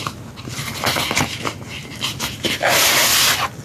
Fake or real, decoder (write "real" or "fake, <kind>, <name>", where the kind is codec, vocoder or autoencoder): real